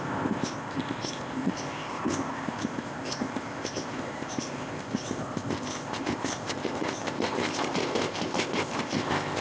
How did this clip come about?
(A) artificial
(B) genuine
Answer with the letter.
A